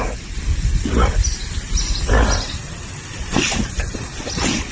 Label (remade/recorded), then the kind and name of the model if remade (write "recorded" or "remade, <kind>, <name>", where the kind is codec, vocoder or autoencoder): recorded